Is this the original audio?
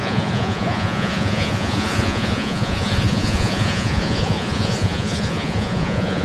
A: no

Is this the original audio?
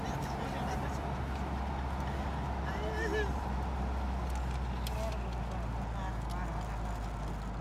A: yes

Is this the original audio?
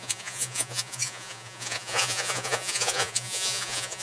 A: no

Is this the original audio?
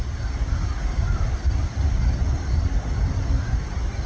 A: yes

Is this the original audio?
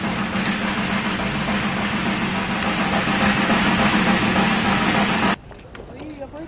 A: yes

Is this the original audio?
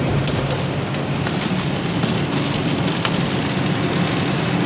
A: yes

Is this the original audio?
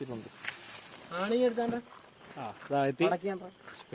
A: yes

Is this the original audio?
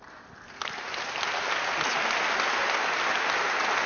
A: yes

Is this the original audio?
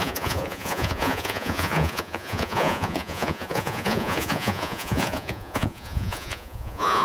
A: no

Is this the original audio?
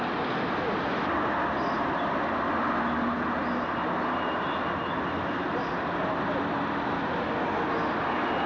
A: yes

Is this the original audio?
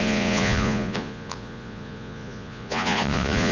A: no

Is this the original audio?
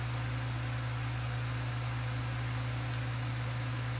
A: yes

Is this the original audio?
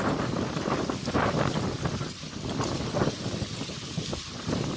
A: yes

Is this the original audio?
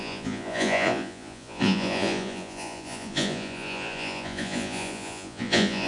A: no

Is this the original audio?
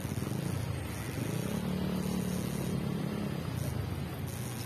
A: yes